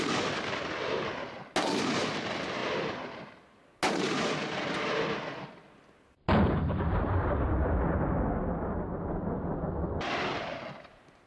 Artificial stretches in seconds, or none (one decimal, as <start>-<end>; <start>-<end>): none